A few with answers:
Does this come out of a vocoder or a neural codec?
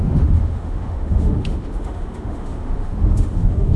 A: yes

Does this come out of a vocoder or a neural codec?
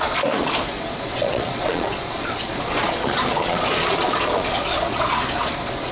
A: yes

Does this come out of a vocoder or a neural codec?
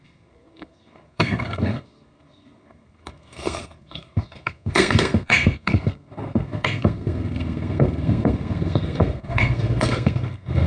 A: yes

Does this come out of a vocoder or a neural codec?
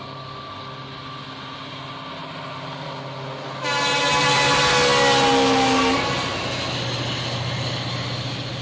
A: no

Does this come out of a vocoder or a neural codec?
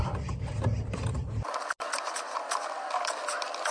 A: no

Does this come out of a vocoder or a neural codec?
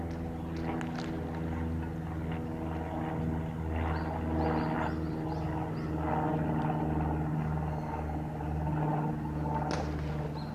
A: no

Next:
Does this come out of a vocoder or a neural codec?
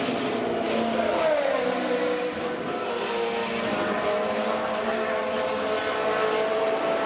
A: no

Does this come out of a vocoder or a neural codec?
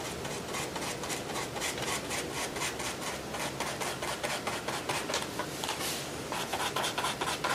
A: no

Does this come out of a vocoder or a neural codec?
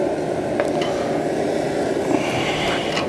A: no